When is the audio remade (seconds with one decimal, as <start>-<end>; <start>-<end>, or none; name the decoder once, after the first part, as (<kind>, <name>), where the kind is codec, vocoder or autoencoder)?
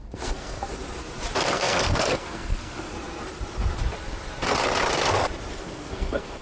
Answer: 0.0-0.7 (codec, SNAC); 1.4-2.9; 5.5-6.4